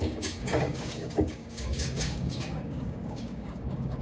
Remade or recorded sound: remade